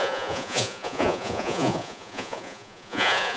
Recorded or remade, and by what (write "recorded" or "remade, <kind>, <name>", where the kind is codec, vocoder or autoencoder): remade, vocoder, Vocos